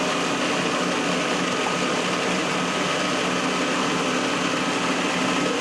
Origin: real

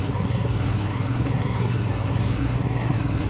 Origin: fake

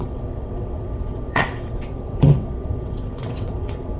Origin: fake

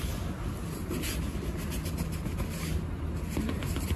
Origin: real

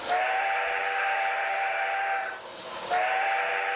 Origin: real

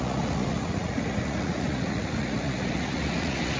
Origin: fake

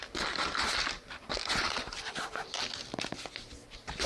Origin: real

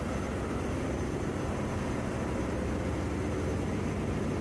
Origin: real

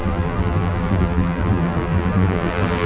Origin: fake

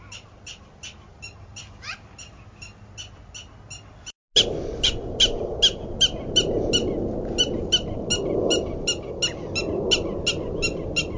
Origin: real